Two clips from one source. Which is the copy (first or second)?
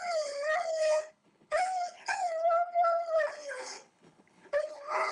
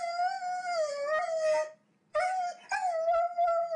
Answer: first